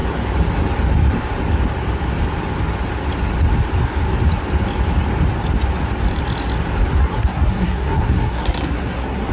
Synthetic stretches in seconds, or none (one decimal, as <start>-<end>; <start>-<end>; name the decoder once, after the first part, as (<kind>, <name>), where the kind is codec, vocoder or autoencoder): 7.0-9.3 (codec, SNAC)